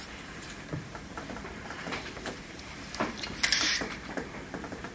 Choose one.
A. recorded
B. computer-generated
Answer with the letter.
B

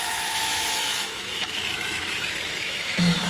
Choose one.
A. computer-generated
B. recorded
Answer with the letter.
A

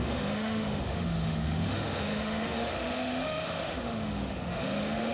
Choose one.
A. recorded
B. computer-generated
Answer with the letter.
B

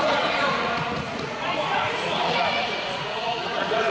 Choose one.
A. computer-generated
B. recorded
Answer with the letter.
A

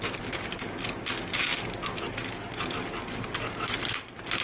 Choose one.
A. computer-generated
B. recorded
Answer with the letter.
B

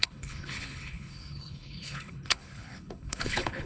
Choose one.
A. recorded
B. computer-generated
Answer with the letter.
B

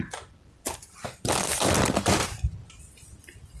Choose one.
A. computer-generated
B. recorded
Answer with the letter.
B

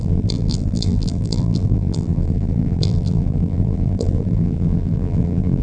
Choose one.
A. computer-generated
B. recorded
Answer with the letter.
A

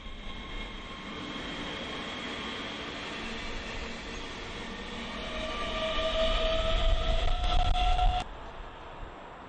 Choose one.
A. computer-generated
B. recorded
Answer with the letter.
B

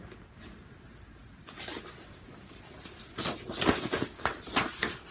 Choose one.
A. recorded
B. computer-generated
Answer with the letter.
A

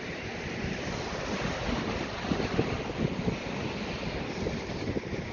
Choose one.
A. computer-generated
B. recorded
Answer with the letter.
B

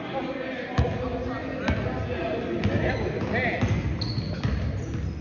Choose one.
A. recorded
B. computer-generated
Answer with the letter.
A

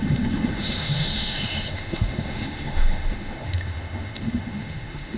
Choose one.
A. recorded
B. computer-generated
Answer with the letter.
B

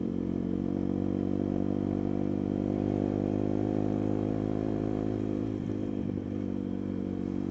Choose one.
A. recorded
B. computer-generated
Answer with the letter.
B